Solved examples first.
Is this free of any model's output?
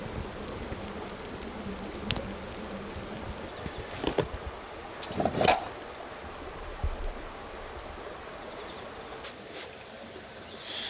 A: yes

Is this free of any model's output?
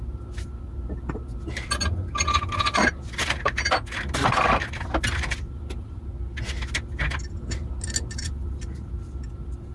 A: yes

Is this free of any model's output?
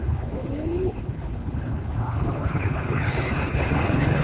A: no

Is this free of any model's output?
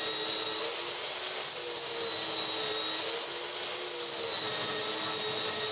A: yes